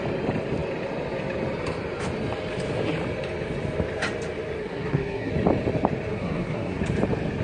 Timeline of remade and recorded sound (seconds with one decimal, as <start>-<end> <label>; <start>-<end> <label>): 0.0-4.6 recorded; 4.6-5.3 remade; 5.3-6.1 recorded; 6.1-6.8 remade; 6.8-7.4 recorded